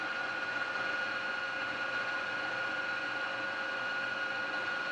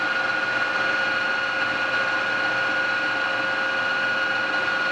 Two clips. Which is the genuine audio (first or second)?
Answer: second